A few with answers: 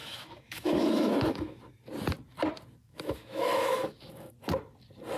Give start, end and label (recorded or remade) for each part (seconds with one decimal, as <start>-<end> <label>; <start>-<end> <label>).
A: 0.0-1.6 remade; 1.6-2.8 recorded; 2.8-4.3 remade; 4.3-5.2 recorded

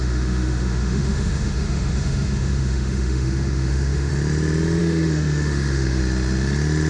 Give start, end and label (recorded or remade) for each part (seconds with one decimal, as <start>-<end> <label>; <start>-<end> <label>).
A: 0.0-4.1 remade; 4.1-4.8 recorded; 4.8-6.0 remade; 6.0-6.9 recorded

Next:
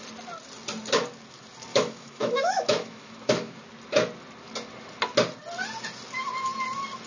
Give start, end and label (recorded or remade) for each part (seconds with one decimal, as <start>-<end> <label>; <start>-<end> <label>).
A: 0.0-1.7 recorded; 1.7-3.6 remade; 3.6-7.1 recorded

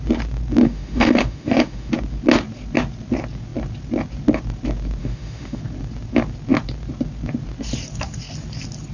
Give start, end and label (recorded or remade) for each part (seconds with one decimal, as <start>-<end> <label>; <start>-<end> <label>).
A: 0.0-0.6 recorded; 0.6-1.9 remade; 1.9-5.0 recorded; 5.0-5.6 remade; 5.6-8.9 recorded

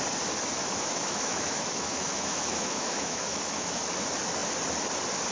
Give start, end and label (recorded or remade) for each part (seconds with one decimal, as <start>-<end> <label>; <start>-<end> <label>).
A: 0.0-0.6 recorded; 0.6-3.8 remade; 3.8-5.3 recorded